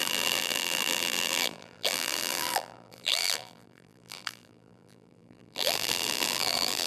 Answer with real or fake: fake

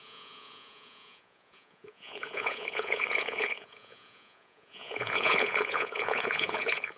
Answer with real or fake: fake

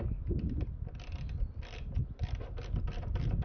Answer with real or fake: real